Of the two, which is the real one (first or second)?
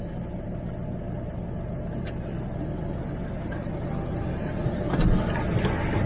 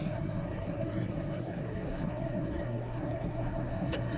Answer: first